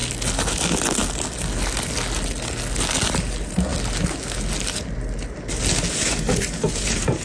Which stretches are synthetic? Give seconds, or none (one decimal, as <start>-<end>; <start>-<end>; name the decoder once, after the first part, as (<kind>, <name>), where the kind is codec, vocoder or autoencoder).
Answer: 3.2-3.7 (vocoder, BigVGAN v2); 5.9-7.2